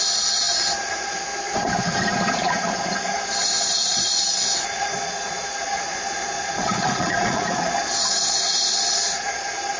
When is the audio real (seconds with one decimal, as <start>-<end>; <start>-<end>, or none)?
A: 1.3-2.3